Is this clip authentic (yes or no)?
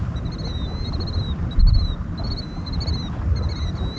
yes